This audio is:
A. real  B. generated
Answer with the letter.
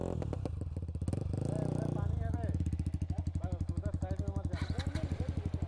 A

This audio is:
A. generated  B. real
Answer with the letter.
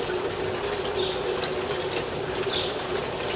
B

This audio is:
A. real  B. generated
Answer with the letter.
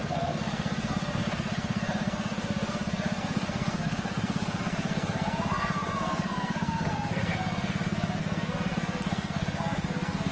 B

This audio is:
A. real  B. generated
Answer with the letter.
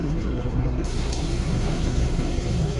B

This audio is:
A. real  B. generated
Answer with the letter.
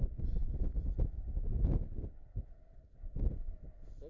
A